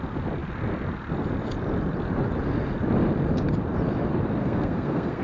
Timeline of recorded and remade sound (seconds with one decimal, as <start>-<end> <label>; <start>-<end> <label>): 0.0-4.4 recorded; 4.4-5.2 remade